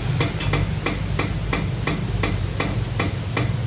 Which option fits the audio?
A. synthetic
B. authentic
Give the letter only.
B